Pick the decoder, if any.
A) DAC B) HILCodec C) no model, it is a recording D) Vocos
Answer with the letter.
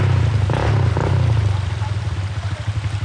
C